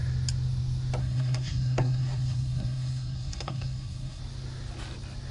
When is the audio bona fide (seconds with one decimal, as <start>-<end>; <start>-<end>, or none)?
0.0-1.0; 4.2-5.3